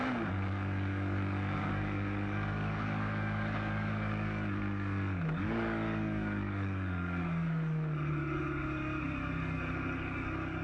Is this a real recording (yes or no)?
no